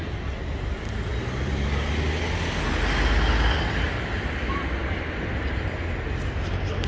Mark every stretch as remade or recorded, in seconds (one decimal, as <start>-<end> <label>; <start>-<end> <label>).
0.0-6.9 recorded